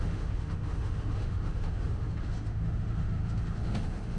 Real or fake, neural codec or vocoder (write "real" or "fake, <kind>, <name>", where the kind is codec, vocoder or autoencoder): fake, autoencoder, DAC-VAE